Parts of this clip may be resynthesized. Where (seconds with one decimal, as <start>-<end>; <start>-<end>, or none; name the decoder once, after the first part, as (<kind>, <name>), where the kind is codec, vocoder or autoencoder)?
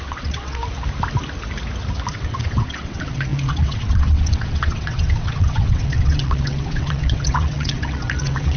0.0-0.6 (vocoder, WaveNeXt); 2.1-8.6